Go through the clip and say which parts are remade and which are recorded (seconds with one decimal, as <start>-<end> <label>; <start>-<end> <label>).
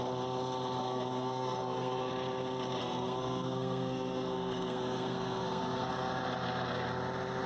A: 0.0-0.8 recorded; 0.8-2.1 remade; 2.1-2.8 recorded; 2.8-5.9 remade; 5.9-7.5 recorded